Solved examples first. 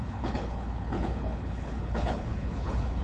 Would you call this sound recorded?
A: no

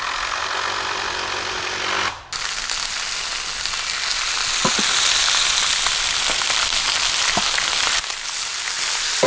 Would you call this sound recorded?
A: yes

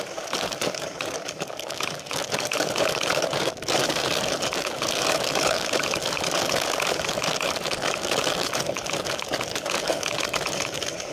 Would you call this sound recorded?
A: no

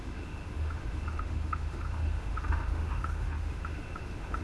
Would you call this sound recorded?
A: no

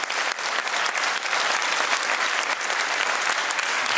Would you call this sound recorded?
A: yes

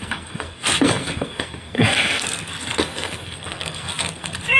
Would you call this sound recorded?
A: no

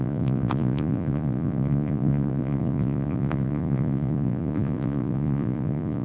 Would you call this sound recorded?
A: no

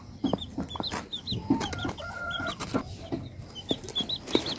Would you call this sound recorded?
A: yes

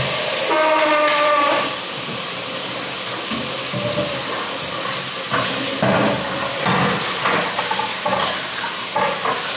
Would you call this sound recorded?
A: yes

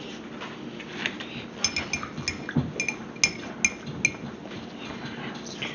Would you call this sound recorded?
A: yes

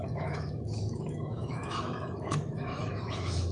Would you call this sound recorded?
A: no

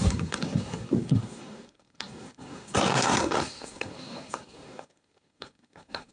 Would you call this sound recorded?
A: no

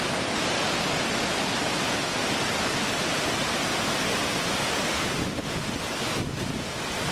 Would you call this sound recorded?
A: yes